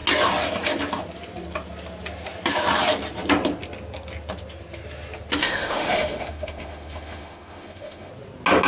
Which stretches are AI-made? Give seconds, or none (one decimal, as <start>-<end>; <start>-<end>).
5.4-8.1